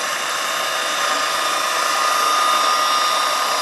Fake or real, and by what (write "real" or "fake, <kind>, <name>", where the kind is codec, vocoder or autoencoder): real